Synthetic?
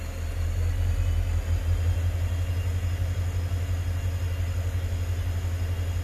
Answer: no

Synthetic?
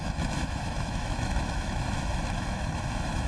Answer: yes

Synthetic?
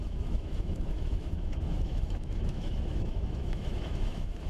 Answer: yes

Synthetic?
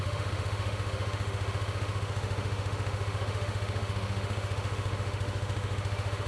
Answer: yes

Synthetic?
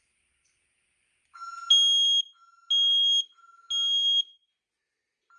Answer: no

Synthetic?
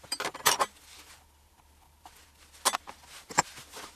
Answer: no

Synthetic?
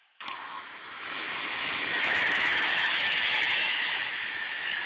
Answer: yes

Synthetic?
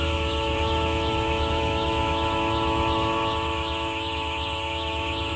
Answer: yes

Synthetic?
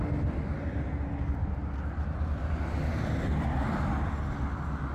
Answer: no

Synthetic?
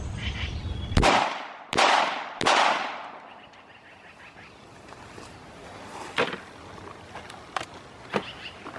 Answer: no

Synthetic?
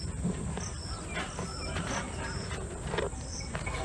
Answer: no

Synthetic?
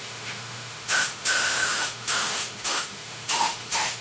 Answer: yes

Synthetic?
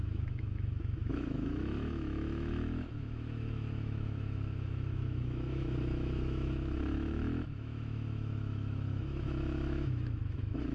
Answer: yes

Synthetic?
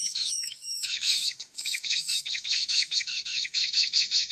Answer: yes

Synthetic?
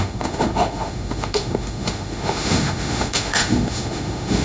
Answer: yes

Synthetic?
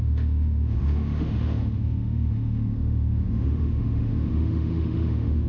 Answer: yes